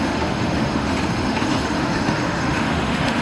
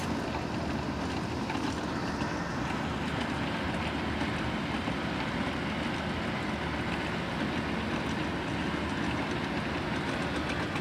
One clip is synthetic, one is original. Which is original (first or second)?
second